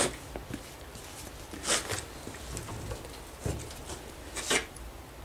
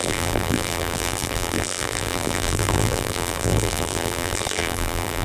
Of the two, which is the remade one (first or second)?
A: second